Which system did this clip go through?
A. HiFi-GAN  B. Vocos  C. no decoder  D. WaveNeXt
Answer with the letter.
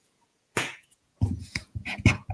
B